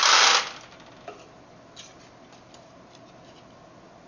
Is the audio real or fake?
real